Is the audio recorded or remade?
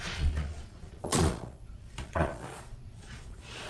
remade